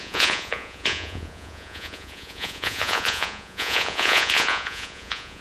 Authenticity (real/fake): fake